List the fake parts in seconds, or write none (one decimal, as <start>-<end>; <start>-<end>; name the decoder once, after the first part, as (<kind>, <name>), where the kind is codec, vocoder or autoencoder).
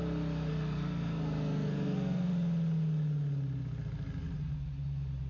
0.5-2.3 (codec, SNAC)